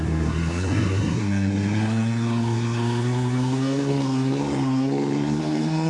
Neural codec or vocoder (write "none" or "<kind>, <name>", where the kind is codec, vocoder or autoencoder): codec, SNAC